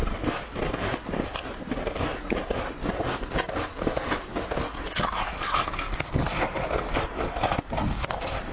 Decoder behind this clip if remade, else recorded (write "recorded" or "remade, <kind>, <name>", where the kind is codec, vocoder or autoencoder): recorded